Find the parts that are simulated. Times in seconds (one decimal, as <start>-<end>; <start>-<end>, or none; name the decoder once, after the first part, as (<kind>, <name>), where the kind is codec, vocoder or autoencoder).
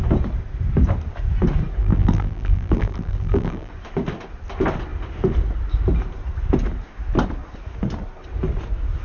1.8-3.7 (vocoder, BigVGAN v2)